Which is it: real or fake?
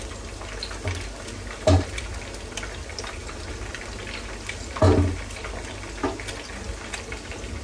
real